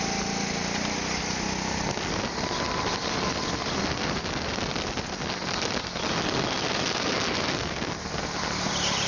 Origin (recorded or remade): recorded